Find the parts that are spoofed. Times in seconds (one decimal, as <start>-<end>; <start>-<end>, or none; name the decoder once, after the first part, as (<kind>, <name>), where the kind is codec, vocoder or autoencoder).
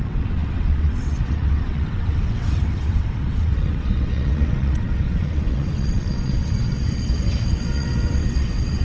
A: 0.0-8.8 (vocoder, WaveNeXt)